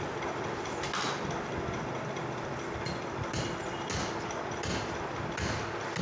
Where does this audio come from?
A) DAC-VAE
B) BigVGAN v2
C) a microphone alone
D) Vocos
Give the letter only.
C